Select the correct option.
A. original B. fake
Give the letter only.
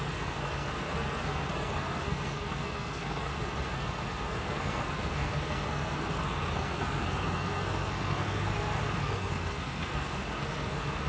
B